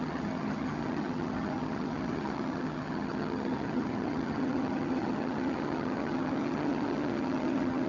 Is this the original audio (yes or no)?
no